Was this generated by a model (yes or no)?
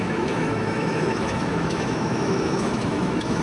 yes